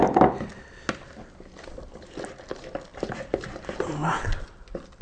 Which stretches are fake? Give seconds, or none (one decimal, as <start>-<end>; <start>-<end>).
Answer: none